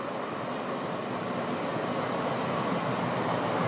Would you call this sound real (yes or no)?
yes